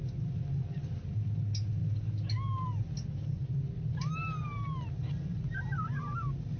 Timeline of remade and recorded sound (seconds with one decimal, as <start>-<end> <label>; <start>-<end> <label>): 0.0-6.6 recorded